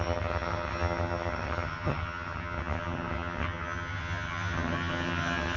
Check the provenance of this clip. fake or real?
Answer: fake